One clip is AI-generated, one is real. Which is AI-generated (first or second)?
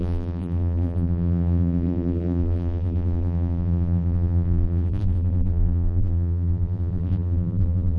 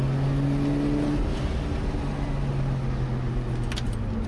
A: first